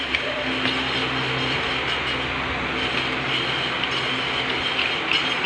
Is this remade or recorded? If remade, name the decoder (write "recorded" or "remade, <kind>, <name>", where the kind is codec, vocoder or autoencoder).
recorded